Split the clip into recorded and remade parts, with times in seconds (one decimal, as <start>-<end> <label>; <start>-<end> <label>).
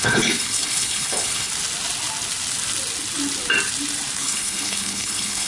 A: 0.0-1.5 remade; 1.5-4.2 recorded; 4.2-5.5 remade